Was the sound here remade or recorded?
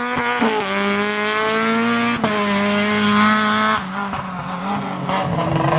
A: recorded